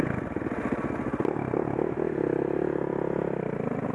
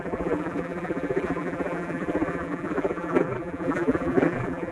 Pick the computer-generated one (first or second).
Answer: second